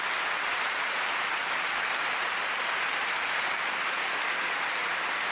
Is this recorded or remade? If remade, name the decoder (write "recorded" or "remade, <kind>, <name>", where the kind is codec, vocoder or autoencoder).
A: recorded